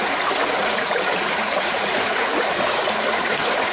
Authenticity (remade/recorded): remade